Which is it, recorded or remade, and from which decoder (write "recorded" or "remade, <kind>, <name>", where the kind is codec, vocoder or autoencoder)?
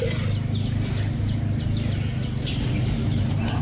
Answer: recorded